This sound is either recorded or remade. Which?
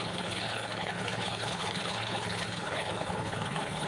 remade